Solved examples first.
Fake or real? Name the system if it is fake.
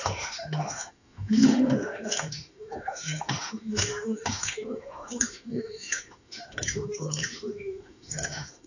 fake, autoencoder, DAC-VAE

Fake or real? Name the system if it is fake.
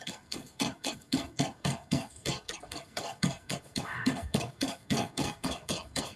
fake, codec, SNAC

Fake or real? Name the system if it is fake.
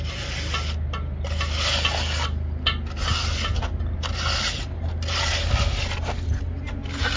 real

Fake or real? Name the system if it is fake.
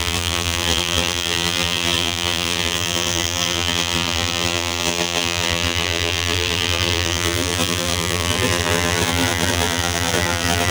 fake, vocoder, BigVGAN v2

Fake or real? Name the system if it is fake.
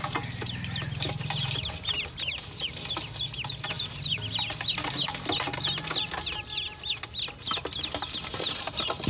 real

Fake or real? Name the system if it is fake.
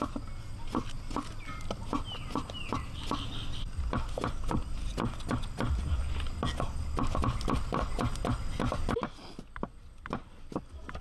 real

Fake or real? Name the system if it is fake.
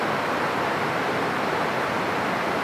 real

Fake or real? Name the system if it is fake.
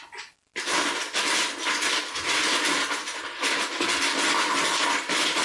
real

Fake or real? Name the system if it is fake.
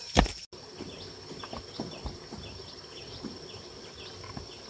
real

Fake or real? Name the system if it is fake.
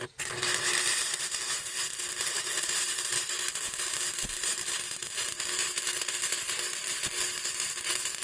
real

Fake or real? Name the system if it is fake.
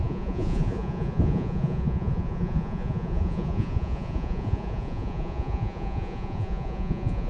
fake, vocoder, Vocos